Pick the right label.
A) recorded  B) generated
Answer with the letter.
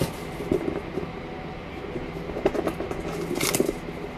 A